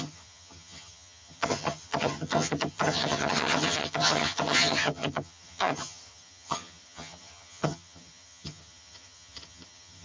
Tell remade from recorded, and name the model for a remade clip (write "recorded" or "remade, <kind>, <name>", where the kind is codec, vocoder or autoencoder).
remade, vocoder, HiFi-GAN